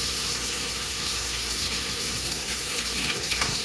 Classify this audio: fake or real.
fake